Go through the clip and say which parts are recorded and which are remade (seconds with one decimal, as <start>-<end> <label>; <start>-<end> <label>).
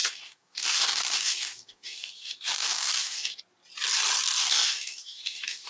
0.0-3.4 remade; 3.4-4.4 recorded; 4.4-5.7 remade